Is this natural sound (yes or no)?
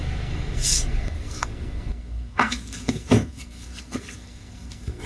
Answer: no